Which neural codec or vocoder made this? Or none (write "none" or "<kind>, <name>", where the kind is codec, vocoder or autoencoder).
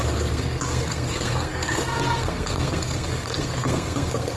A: codec, SNAC